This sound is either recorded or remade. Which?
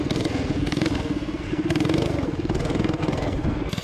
remade